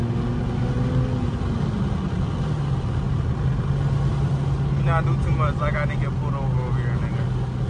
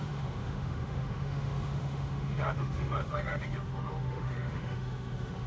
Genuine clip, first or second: first